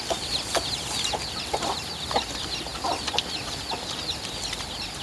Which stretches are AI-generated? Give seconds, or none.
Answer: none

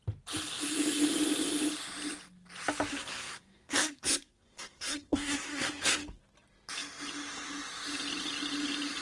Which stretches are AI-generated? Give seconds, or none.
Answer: 2.9-6.2 (codec, SNAC)